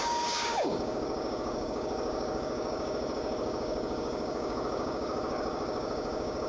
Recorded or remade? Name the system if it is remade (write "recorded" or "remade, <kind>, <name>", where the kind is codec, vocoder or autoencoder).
remade, codec, DAC